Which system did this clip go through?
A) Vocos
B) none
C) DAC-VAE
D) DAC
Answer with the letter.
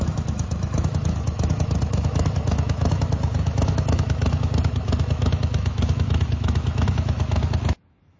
C